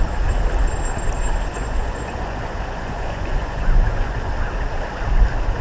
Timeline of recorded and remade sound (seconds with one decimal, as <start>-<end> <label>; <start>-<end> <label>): 0.0-1.5 recorded; 1.5-4.3 remade; 4.3-5.6 recorded